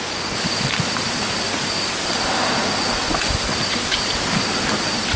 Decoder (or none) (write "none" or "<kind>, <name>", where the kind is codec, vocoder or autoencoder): none